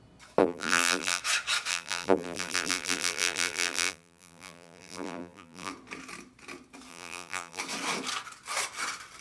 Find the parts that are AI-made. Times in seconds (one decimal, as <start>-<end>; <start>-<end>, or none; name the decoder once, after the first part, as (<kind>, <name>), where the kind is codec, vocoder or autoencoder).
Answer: 0.4-1.2 (vocoder, BigVGAN v2); 1.7-5.7; 6.9-7.6